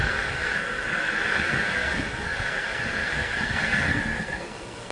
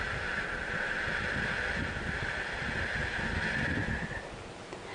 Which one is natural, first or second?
second